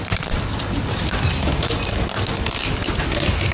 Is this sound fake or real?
real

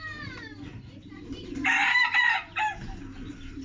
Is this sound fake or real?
fake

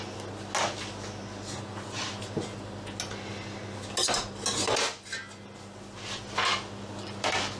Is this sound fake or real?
real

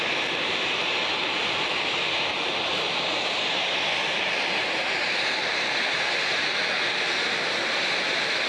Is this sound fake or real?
fake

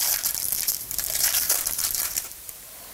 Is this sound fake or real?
fake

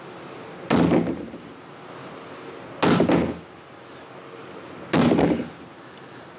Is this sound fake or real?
real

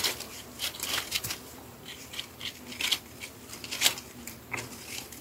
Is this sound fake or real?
fake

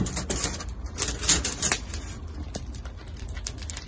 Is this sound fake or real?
real